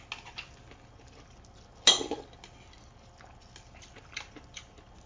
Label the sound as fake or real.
real